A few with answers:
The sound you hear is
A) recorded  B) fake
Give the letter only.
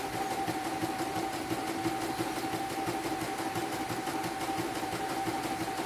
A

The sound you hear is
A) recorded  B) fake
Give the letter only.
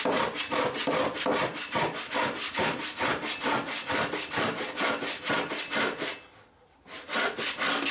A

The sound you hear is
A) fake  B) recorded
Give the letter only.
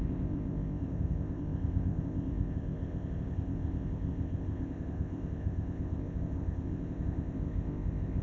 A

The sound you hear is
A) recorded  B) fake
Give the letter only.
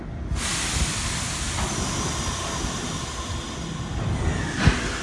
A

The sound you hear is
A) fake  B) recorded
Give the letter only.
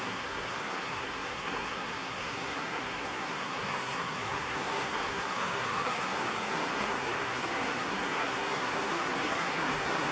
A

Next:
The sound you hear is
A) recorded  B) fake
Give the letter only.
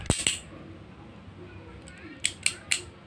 A